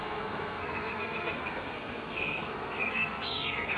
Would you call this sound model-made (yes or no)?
yes